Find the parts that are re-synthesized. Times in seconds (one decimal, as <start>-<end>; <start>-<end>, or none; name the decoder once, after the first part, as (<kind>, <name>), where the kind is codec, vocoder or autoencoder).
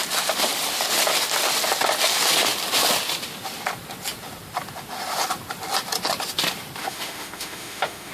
6.8-8.1 (autoencoder, DAC-VAE)